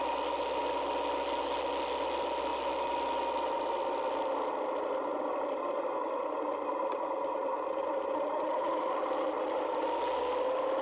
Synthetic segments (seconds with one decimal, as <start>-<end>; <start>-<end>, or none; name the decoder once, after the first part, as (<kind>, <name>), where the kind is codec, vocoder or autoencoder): none